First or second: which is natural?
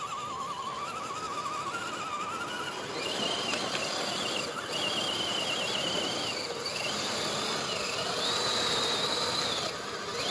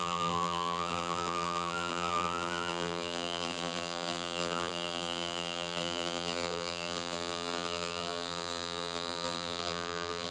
first